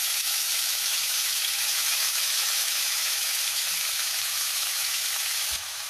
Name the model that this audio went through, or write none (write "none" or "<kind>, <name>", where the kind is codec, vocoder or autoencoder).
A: autoencoder, DAC-VAE